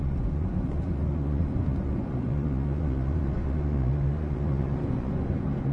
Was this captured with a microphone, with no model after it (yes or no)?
no